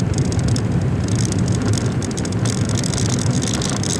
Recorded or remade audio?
recorded